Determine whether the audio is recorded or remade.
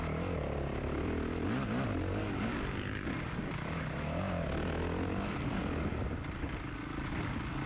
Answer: recorded